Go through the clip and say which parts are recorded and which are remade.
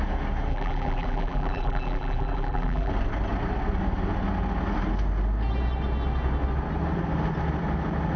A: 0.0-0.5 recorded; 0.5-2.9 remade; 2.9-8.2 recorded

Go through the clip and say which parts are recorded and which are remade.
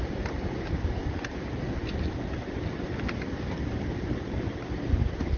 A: 0.0-5.4 recorded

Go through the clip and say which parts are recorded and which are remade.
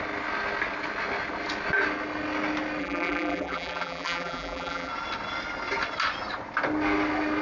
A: 0.0-2.8 recorded; 2.8-4.9 remade; 4.9-7.4 recorded